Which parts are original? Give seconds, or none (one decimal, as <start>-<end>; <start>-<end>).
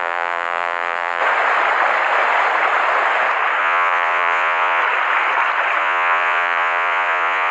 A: 1.2-3.6; 4.8-5.8